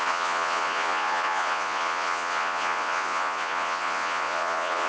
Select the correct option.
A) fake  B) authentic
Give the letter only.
A